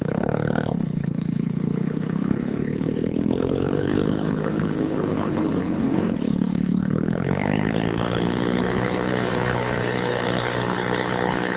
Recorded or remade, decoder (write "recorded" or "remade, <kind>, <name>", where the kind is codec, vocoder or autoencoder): remade, codec, HILCodec